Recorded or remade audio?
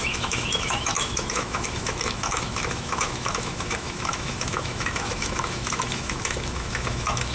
remade